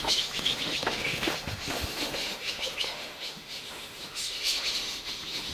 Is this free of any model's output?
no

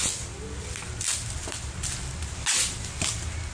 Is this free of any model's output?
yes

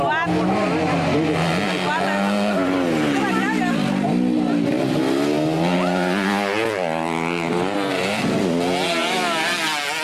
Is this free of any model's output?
yes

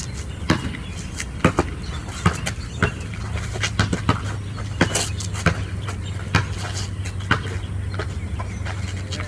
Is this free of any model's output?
yes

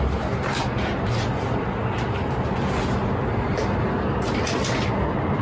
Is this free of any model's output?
yes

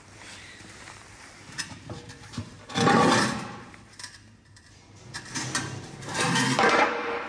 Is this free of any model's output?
no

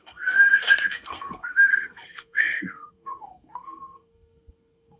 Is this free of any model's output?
no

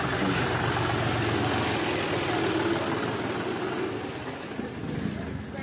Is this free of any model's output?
yes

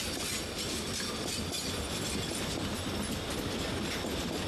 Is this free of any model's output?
yes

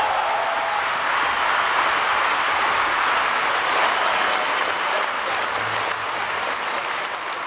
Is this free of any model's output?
yes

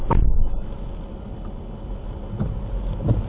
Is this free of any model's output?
yes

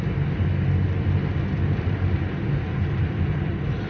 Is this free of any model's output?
yes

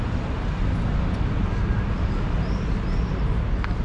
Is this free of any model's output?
yes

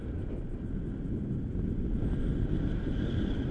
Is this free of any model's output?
yes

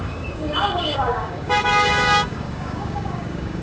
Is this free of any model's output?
no